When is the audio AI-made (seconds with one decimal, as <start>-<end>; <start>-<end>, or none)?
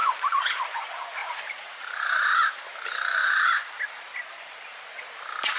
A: 0.0-0.6; 1.2-2.5; 3.2-3.8